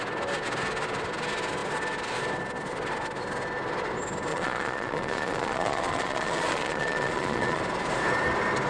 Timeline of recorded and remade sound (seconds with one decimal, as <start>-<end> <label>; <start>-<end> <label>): 0.0-4.3 recorded; 4.3-7.6 remade; 7.6-8.7 recorded